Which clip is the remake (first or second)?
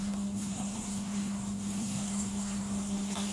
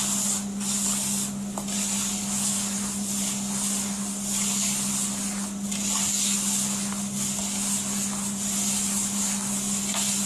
first